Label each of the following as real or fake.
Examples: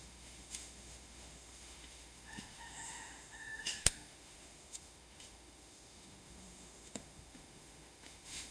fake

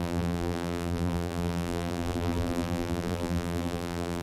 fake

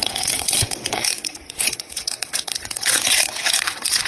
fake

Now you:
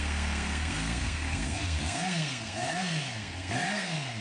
fake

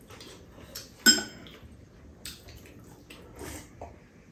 real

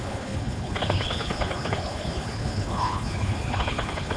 fake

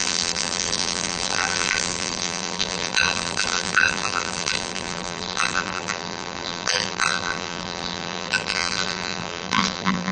fake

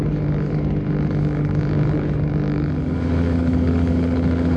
fake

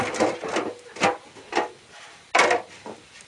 real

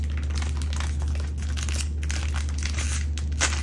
real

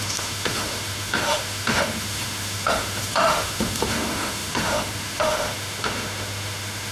fake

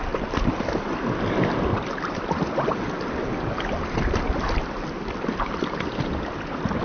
real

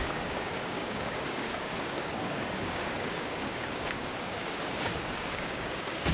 fake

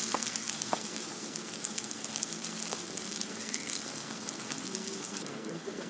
fake